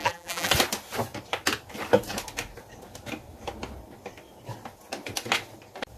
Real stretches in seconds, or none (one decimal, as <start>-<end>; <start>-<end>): 0.5-6.0